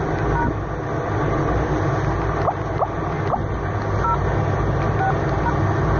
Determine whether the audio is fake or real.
real